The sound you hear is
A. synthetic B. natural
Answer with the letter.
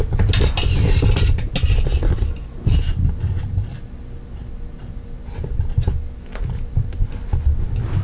B